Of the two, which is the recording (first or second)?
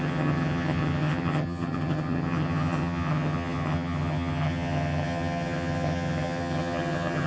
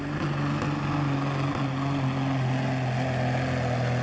second